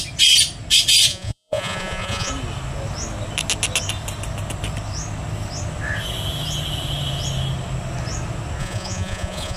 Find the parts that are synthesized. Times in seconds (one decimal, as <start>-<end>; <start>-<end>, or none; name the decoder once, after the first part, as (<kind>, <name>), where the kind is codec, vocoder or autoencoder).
1.1-2.3 (vocoder, Vocos); 8.6-9.6